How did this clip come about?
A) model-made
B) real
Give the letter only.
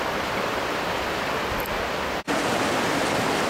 A